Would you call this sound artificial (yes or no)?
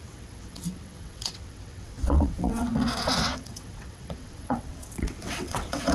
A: yes